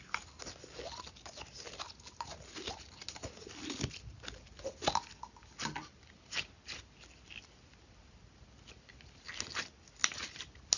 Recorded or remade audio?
recorded